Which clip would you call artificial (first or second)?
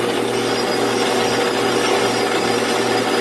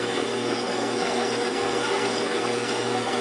second